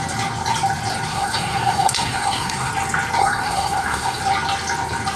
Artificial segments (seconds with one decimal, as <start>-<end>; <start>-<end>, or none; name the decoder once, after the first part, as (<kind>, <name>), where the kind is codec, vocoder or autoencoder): 1.1-2.7 (codec, SNAC); 3.2-4.2